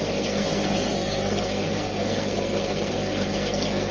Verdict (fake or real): fake